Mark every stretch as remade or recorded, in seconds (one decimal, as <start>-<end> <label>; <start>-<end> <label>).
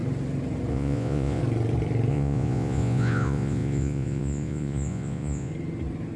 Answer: 0.0-0.7 recorded; 0.7-1.4 remade; 1.4-2.1 recorded; 2.1-5.5 remade; 5.5-6.2 recorded